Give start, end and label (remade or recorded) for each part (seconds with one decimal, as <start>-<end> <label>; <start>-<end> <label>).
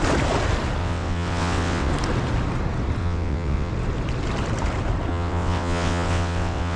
0.0-0.8 recorded; 0.8-1.9 remade; 1.9-3.0 recorded; 3.0-3.7 remade; 3.7-5.1 recorded; 5.1-6.8 remade